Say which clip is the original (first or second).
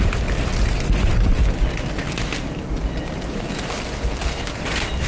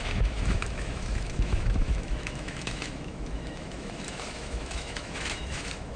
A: first